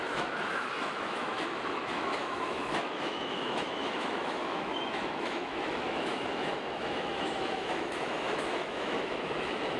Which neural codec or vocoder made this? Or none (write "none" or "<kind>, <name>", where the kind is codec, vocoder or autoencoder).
autoencoder, DAC-VAE